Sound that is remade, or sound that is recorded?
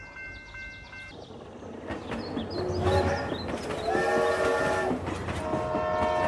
recorded